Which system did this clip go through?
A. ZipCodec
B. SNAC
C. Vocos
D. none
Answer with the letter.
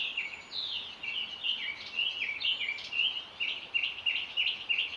D